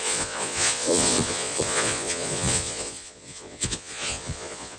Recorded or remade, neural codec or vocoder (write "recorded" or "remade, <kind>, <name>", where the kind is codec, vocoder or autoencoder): remade, vocoder, Vocos